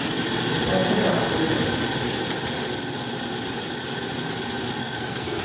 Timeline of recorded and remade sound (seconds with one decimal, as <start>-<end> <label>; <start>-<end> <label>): 0.0-4.8 recorded; 4.8-5.4 remade